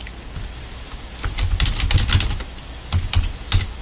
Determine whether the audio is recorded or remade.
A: recorded